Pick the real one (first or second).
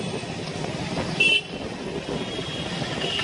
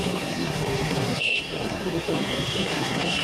first